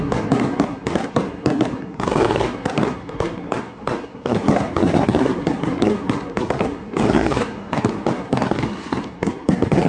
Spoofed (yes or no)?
yes